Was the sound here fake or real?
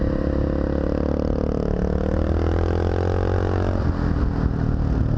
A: real